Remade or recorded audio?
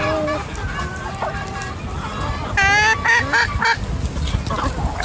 recorded